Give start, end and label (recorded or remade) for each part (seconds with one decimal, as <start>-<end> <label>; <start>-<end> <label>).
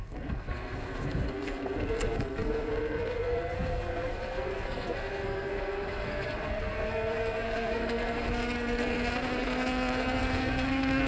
0.0-11.1 remade